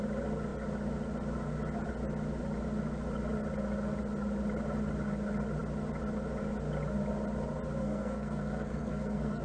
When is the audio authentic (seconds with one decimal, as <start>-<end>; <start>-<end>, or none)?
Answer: 0.0-7.8